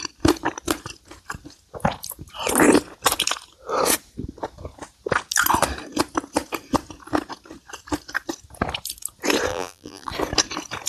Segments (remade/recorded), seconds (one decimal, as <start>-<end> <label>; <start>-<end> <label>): 0.0-9.5 recorded; 9.5-10.1 remade; 10.1-10.9 recorded